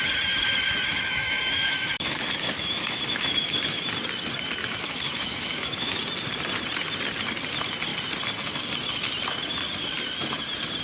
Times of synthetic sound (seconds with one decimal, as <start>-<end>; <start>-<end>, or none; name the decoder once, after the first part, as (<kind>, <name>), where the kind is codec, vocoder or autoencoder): 0.9-3.9 (autoencoder, DAC-VAE); 4.6-6.0

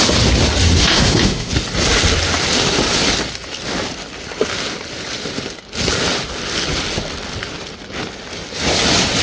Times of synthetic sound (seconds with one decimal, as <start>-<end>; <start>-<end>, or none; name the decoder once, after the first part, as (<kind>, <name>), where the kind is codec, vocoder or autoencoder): 0.8-1.5 (autoencoder, DAC-VAE)

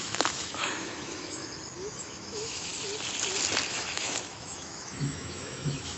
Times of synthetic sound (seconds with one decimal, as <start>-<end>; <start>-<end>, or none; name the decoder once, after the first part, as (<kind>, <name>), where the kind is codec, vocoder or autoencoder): 0.0-1.4 (autoencoder, DAC-VAE); 2.0-2.7; 3.7-6.0

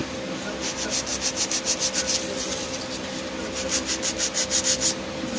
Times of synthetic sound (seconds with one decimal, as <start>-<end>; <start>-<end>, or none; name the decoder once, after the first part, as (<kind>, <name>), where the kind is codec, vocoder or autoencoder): none

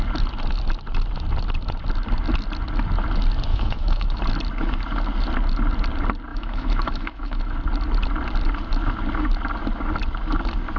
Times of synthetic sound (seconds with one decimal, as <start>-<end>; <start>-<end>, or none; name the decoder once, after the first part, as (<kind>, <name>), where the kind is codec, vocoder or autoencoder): 3.5-4.2 (autoencoder, DAC-VAE); 6.3-7.5

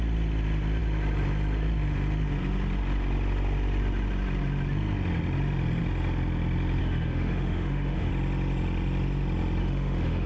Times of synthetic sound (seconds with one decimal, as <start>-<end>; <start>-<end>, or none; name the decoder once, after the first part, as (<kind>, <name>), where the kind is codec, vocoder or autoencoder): 6.8-8.1 (autoencoder, DAC-VAE); 9.6-10.3